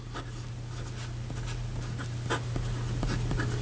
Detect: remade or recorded recorded